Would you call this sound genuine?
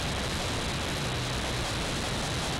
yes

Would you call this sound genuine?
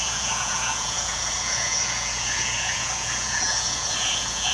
no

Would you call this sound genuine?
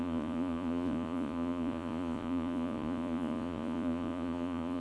no